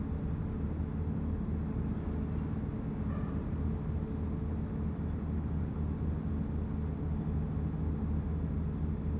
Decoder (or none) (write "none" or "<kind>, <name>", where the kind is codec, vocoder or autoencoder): none